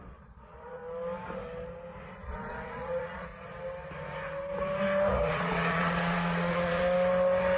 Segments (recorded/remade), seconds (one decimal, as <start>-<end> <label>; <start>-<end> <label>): 0.0-0.8 remade; 0.8-2.3 recorded; 2.3-3.3 remade; 3.3-5.3 recorded; 5.3-6.8 remade; 6.8-7.6 recorded